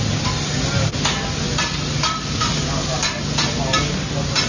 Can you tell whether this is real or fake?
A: real